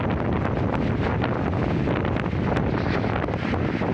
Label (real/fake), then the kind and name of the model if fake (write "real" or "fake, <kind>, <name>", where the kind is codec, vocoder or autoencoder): real